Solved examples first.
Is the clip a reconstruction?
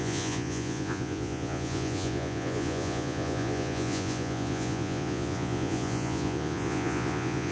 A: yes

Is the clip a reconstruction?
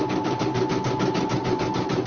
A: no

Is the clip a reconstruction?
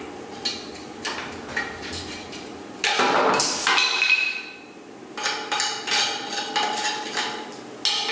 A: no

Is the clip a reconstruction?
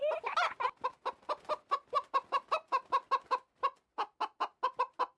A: no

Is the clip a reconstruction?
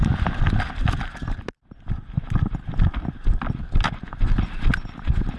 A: no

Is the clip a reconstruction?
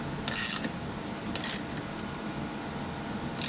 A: no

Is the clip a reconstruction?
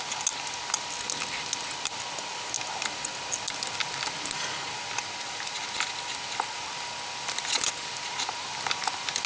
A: no